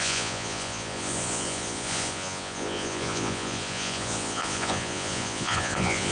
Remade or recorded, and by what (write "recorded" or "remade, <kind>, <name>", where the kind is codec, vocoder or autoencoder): remade, vocoder, Vocos